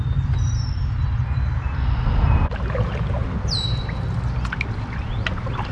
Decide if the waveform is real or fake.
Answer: real